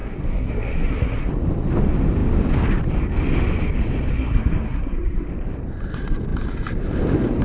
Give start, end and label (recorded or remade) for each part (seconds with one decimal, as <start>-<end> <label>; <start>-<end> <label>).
0.0-1.3 remade; 1.3-4.1 recorded; 4.1-5.3 remade; 5.3-7.4 recorded